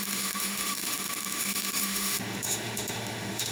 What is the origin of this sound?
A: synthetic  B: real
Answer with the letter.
A